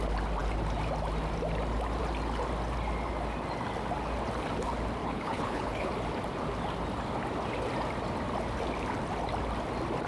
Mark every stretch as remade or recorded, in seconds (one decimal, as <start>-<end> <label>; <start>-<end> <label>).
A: 0.0-5.0 recorded; 5.0-5.9 remade; 5.9-10.1 recorded